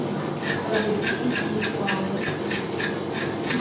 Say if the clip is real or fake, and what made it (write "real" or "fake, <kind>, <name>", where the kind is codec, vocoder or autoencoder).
real